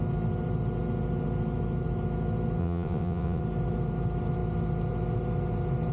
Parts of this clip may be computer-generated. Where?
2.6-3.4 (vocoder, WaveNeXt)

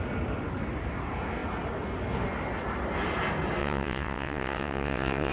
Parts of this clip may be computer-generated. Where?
3.6-5.3 (vocoder, WaveNeXt)

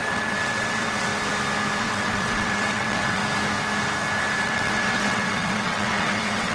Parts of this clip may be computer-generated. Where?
0.0-1.1 (vocoder, WaveNeXt); 1.8-3.2; 4.4-6.5

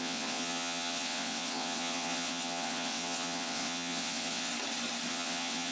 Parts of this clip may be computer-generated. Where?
0.0-4.5 (vocoder, WaveNeXt); 5.1-5.7

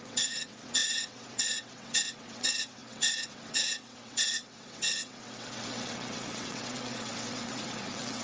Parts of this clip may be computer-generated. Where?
0.0-8.2 (vocoder, WaveNeXt)

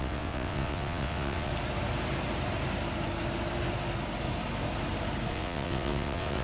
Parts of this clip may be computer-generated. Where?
0.0-1.5 (vocoder, WaveNeXt); 5.3-6.4